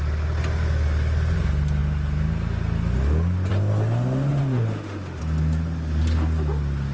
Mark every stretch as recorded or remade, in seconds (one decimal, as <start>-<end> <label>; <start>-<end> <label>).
0.0-4.4 recorded; 4.4-5.2 remade; 5.2-6.9 recorded